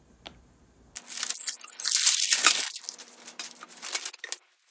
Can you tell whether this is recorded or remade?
recorded